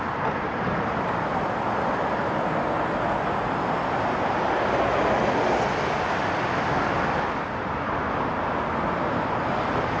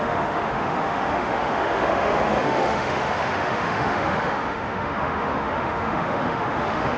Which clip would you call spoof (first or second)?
second